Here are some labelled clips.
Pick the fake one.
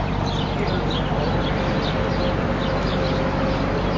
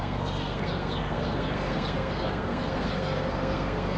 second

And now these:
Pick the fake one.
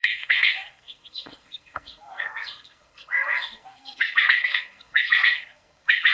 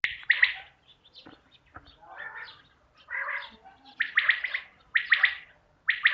first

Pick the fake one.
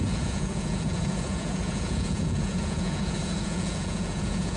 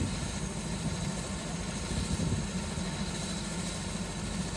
first